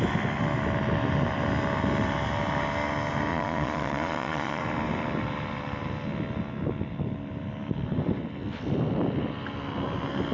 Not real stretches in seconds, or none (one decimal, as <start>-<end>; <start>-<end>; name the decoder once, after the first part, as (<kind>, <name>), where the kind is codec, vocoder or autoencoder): 3.3-4.6 (vocoder, Vocos)